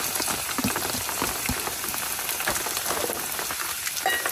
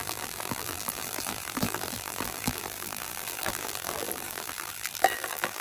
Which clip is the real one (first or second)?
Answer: first